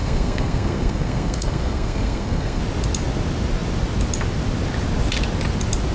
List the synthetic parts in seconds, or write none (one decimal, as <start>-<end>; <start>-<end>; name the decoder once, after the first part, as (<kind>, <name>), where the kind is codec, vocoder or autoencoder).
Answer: 0.0-2.6 (codec, SNAC)